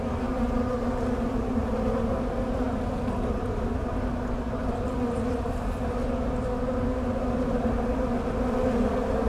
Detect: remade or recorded recorded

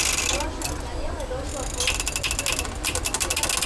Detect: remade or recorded recorded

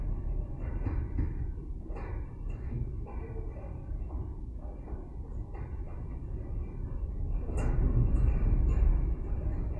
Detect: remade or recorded recorded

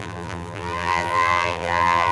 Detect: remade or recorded remade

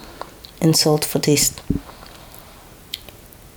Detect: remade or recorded recorded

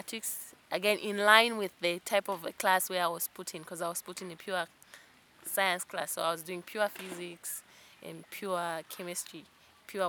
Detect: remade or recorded recorded